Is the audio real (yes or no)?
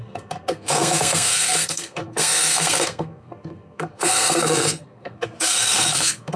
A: no